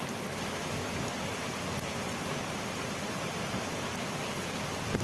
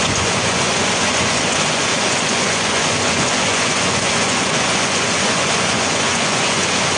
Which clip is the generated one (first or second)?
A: second